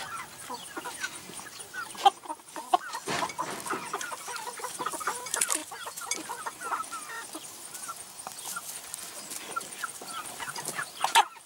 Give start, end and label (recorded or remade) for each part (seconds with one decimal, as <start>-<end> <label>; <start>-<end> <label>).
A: 0.0-11.5 recorded